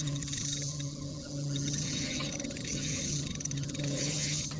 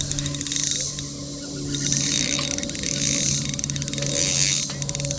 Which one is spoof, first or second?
first